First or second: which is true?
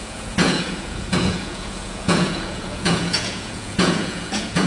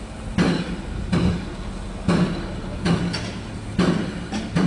second